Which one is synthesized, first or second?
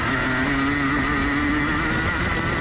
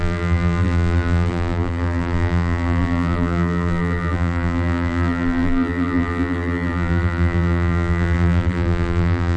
second